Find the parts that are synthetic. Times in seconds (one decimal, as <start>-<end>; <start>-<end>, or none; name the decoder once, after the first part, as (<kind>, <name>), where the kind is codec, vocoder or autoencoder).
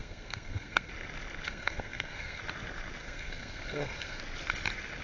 0.0-0.9 (codec, SNAC); 1.5-2.4; 3.0-4.2